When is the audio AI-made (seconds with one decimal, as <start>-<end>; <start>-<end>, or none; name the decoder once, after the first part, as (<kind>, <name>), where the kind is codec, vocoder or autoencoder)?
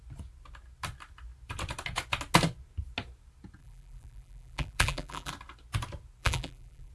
3.6-5.3 (vocoder, BigVGAN v2); 6.2-6.9